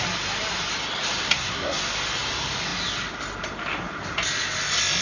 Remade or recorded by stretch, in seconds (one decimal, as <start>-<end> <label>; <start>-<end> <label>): 0.0-1.2 recorded; 1.2-1.8 remade; 1.8-5.0 recorded